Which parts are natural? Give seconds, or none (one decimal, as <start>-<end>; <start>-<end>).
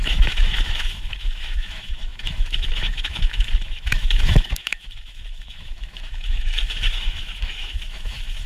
none